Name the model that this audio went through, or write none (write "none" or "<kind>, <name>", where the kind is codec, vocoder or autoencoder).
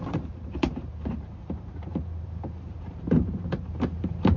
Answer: vocoder, BigVGAN v2